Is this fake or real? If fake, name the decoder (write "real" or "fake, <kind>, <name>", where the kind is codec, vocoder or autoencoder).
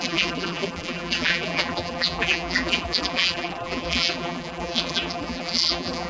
fake, vocoder, BigVGAN v2